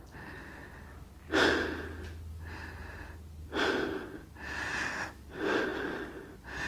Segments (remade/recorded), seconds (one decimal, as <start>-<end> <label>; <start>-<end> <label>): 0.0-6.7 recorded